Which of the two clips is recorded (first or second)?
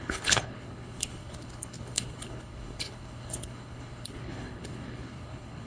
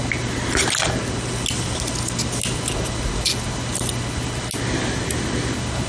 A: second